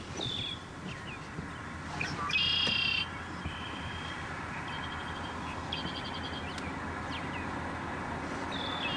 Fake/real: real